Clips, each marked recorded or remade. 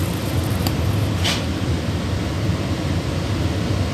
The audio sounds recorded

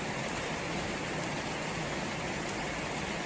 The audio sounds recorded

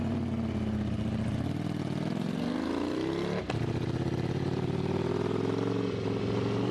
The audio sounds recorded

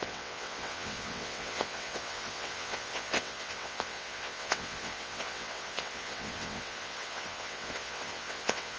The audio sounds remade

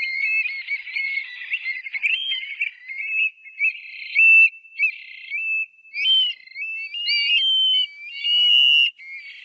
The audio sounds recorded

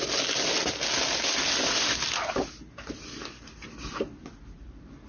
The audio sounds recorded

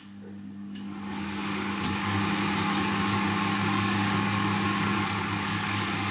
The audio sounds remade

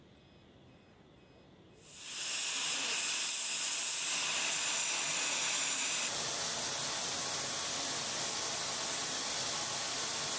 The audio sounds recorded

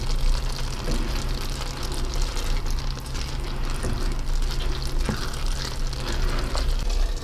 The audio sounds recorded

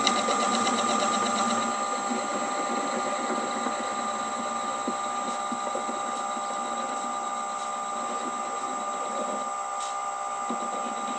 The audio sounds recorded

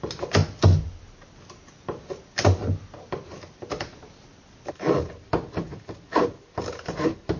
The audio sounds recorded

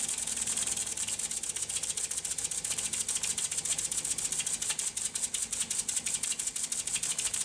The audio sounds recorded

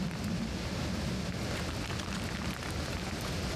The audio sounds recorded